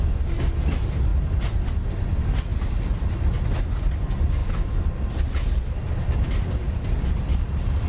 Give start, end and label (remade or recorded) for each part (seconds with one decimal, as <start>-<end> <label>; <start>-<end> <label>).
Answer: 0.0-1.1 recorded; 1.1-1.7 remade; 1.7-2.5 recorded; 2.5-3.3 remade; 3.3-4.4 recorded; 4.4-7.5 remade; 7.5-7.9 recorded